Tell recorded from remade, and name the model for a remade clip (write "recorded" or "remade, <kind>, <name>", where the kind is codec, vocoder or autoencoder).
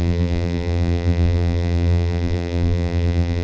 remade, vocoder, BigVGAN v2